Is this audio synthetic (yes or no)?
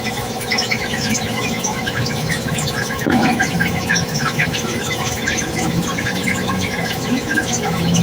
yes